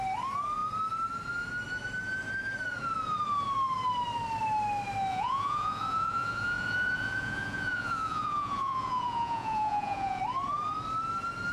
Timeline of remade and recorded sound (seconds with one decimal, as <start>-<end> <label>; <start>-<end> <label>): 0.0-5.1 recorded; 5.1-10.2 remade; 10.2-11.5 recorded

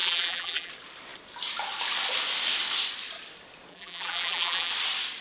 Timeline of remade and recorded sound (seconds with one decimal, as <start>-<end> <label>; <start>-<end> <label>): 0.0-0.7 remade; 0.7-3.7 recorded; 3.7-4.7 remade; 4.7-5.2 recorded

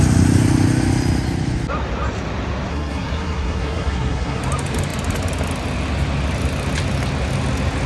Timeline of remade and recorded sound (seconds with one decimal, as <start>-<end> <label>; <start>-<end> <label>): 0.0-2.7 recorded; 2.7-4.4 remade; 4.4-7.9 recorded

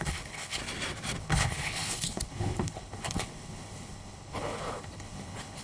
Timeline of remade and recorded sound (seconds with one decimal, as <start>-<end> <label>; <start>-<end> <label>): 0.0-0.6 remade; 0.6-1.2 recorded; 1.2-5.6 remade

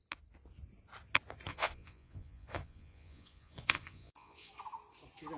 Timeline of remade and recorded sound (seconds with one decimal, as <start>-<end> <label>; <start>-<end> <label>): 0.0-1.5 recorded; 1.5-4.5 remade; 4.5-5.4 recorded

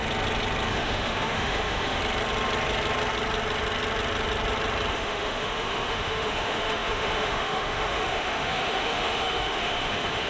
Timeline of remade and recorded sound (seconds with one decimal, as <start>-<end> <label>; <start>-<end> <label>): 0.0-0.7 recorded; 0.7-2.0 remade; 2.0-4.9 recorded; 4.9-10.3 remade

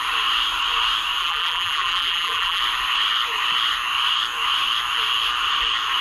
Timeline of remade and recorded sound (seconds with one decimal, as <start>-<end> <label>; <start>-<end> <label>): 0.0-1.2 recorded; 1.2-2.6 remade; 2.6-6.0 recorded

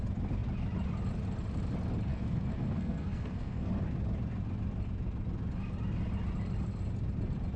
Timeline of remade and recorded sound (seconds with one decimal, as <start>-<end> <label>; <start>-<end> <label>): 0.0-2.1 recorded; 2.1-3.7 remade; 3.7-7.6 recorded